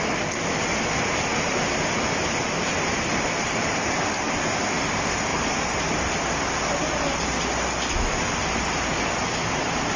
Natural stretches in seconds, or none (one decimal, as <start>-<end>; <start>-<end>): 0.0-1.3; 4.0-5.3; 6.1-8.4; 9.0-10.0